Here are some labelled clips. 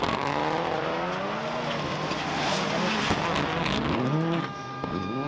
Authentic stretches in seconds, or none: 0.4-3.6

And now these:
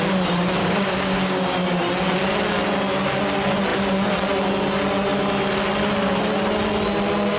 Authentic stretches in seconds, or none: 0.0-0.6; 1.4-7.4

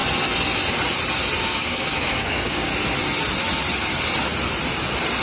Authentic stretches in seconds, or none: 0.0-1.4; 2.7-5.2

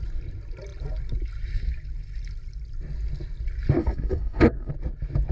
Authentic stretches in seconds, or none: 0.0-3.8; 4.7-5.3

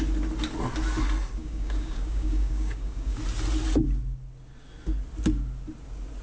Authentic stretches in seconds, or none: 0.0-1.4; 3.2-6.2

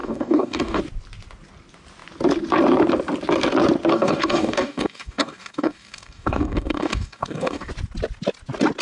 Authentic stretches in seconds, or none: 0.8-3.9; 7.7-8.8

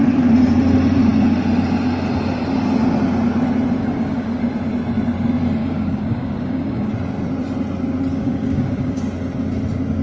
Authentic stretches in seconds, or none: 0.0-3.8; 4.4-5.6; 6.9-8.1; 9.0-10.0